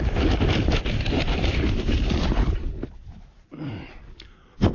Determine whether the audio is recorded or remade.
remade